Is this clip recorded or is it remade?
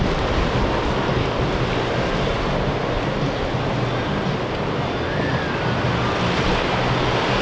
recorded